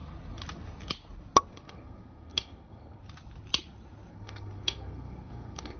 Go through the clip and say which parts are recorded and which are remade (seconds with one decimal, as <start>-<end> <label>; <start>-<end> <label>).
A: 0.0-1.5 recorded; 1.5-3.0 remade; 3.0-4.1 recorded; 4.1-5.8 remade